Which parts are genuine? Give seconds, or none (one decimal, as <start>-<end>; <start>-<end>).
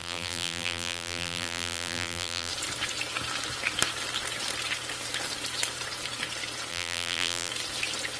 2.5-6.7; 7.5-8.2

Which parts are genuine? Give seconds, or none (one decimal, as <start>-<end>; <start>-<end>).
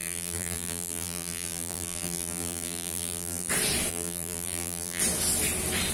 3.5-3.9; 5.0-5.9